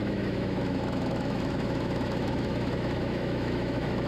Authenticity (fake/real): fake